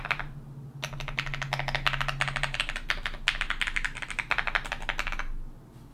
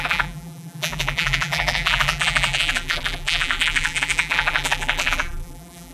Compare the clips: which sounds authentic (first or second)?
first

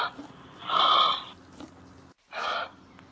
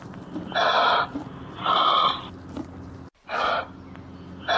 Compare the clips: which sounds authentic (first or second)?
second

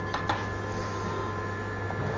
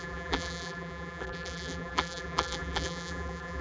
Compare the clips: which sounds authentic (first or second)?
first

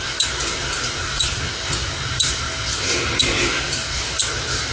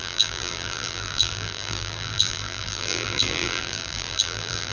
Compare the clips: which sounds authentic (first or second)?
first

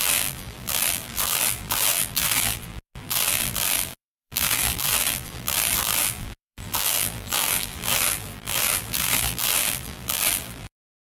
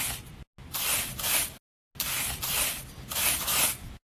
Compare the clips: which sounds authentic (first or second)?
second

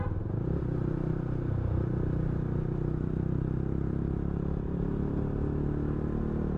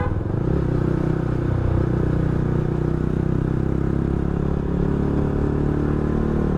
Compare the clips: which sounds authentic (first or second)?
second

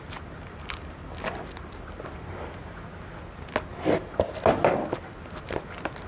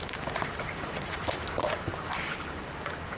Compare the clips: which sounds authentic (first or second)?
first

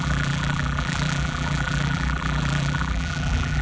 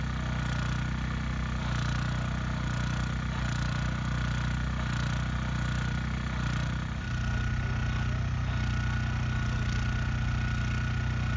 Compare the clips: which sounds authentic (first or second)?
second